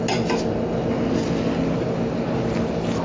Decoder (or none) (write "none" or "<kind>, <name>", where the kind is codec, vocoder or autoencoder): none